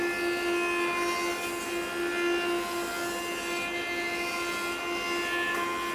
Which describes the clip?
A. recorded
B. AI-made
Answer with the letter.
A